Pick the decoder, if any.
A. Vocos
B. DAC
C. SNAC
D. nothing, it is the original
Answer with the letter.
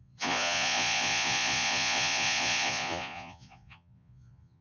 A